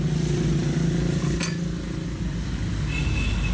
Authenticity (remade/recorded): recorded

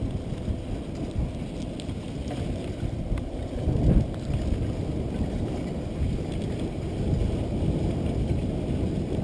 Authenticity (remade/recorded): recorded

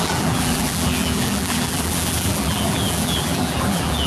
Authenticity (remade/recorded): remade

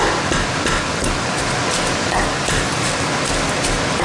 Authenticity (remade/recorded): recorded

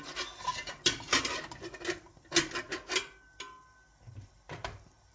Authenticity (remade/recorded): recorded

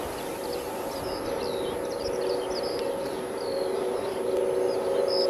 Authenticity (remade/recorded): recorded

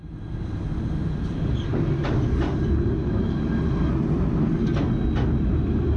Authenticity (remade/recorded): recorded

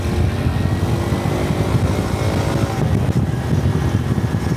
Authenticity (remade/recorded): recorded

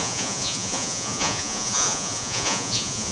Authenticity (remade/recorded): remade